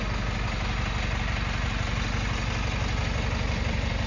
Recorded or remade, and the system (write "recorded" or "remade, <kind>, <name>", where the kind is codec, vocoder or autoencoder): recorded